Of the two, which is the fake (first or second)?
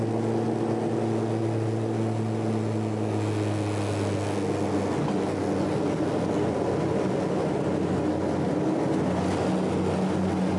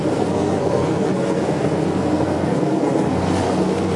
second